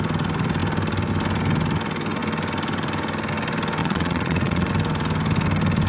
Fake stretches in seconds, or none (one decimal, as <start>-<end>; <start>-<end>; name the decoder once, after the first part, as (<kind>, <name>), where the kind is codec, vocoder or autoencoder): 3.8-4.7 (vocoder, Vocos)